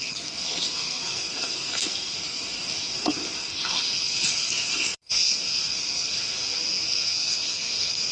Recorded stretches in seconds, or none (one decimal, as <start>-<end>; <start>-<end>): none